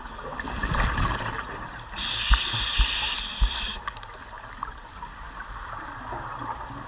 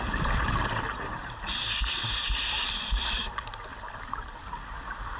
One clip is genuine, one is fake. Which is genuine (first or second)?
first